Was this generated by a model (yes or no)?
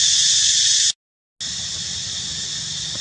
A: no